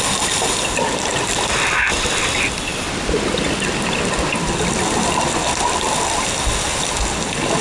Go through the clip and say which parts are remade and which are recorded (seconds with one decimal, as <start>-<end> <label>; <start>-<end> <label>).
0.0-7.6 recorded